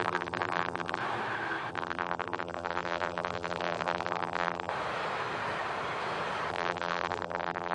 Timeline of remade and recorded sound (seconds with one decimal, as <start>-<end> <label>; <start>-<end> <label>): 0.0-1.0 remade; 1.0-1.7 recorded; 1.7-4.7 remade; 4.7-6.5 recorded; 6.5-7.7 remade